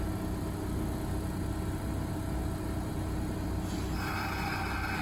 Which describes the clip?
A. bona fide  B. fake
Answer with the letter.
A